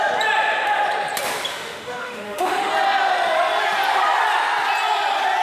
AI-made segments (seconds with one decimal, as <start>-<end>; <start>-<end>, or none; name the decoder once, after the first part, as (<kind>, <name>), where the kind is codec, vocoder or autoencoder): 1.5-2.7 (autoencoder, DAC-VAE)